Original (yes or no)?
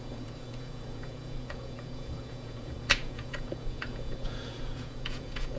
no